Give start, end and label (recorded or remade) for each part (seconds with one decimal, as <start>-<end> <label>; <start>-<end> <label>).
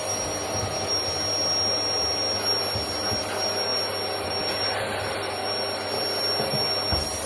0.0-7.3 recorded